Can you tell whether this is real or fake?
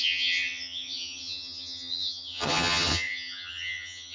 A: fake